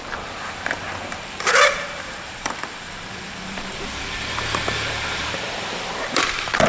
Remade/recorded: remade